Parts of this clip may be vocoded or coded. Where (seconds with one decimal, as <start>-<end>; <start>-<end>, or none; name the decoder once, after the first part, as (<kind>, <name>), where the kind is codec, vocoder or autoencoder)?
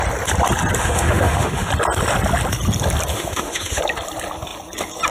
0.8-1.7 (autoencoder, DAC-VAE); 3.1-3.8